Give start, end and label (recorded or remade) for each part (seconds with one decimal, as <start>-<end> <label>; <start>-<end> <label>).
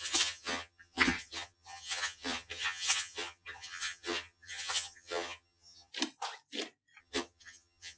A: 0.0-5.9 remade; 5.9-7.0 recorded; 7.0-8.0 remade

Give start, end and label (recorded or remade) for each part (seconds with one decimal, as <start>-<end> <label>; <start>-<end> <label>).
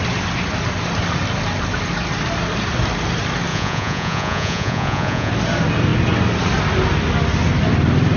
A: 0.0-3.5 recorded; 3.5-5.3 remade; 5.3-8.2 recorded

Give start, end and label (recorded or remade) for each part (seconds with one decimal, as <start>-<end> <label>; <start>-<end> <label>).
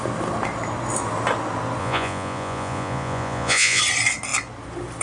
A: 0.0-1.8 recorded; 1.8-3.8 remade; 3.8-5.0 recorded